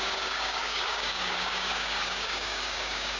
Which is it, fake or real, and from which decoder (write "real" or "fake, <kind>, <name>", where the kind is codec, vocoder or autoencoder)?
fake, codec, DAC